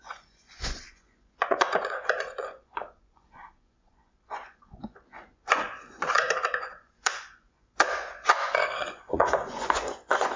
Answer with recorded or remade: remade